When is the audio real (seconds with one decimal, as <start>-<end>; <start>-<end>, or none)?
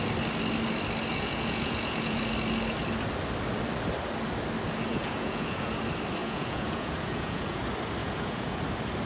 0.0-1.1; 2.2-4.9; 5.7-6.2; 7.6-8.0; 8.6-9.1